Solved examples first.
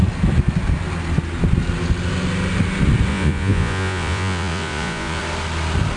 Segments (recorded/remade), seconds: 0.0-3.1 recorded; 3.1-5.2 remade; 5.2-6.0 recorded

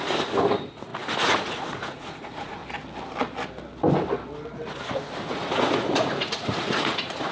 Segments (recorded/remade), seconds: 0.0-2.6 remade; 2.6-5.2 recorded; 5.2-7.3 remade

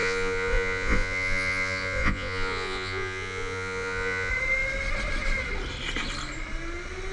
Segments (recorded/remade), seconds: 0.0-4.3 remade; 4.3-7.1 recorded

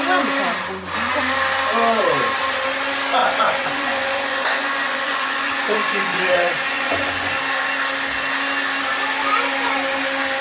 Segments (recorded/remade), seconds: 0.0-3.2 recorded; 3.2-7.4 remade; 7.4-10.4 recorded